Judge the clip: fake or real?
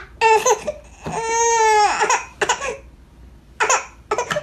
real